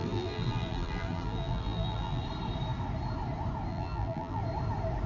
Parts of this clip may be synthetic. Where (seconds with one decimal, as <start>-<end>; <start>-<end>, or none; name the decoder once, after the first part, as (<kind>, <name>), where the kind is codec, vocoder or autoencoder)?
0.0-2.2 (vocoder, BigVGAN v2); 3.7-4.4